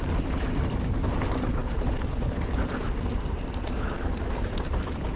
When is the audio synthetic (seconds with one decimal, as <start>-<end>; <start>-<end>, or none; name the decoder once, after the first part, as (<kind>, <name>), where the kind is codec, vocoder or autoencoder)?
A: 0.0-5.2 (vocoder, BigVGAN v2)